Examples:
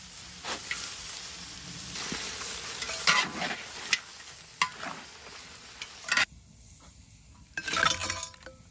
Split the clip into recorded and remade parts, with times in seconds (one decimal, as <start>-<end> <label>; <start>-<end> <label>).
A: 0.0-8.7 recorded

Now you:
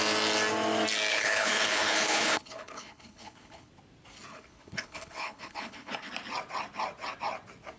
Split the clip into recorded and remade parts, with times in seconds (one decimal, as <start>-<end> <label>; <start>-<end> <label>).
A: 0.0-1.1 recorded; 1.1-3.7 remade; 3.7-4.3 recorded; 4.3-6.1 remade; 6.1-7.8 recorded

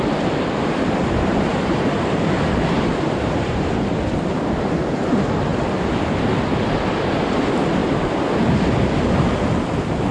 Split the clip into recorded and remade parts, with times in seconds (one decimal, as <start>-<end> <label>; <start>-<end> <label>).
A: 0.0-1.5 recorded; 1.5-3.8 remade; 3.8-7.8 recorded; 7.8-8.3 remade; 8.3-10.1 recorded

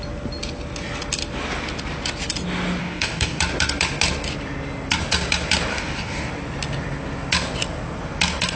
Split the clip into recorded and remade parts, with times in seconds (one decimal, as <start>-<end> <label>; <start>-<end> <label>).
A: 0.0-2.8 recorded; 2.8-3.4 remade; 3.4-5.7 recorded; 5.7-6.3 remade; 6.3-8.6 recorded

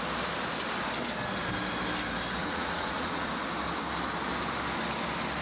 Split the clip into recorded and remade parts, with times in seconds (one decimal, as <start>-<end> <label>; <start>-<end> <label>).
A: 0.0-2.4 recorded; 2.4-3.3 remade; 3.3-5.4 recorded

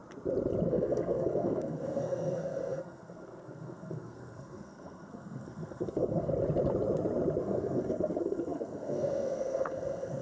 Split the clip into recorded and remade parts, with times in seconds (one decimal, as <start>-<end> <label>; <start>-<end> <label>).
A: 0.0-0.7 recorded; 0.7-6.3 remade; 6.3-7.4 recorded; 7.4-10.2 remade

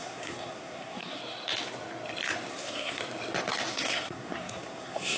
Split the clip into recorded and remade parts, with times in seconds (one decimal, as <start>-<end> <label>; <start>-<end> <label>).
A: 0.0-1.2 remade; 1.2-2.5 recorded; 2.5-3.0 remade; 3.0-3.7 recorded; 3.7-5.2 remade

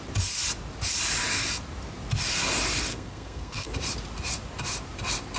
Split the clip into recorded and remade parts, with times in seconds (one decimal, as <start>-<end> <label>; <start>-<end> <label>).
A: 0.0-2.9 recorded; 2.9-3.7 remade; 3.7-5.4 recorded